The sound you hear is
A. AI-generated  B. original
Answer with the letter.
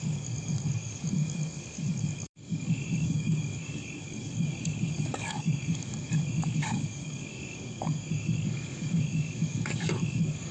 A